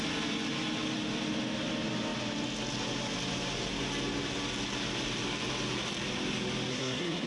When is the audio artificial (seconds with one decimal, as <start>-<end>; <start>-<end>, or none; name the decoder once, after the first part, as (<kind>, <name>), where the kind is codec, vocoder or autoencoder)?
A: 6.7-7.3 (codec, SNAC)